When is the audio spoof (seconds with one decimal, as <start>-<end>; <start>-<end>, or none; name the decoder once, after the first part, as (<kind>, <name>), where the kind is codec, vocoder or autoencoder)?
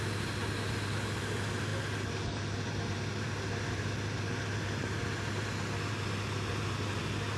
none